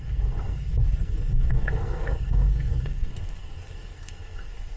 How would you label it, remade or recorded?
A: remade